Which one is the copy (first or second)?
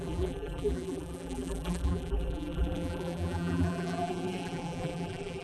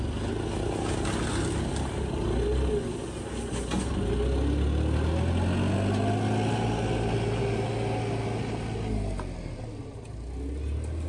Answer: first